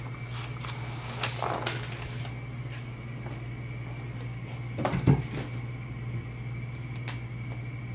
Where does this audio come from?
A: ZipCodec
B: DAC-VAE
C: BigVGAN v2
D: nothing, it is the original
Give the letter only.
D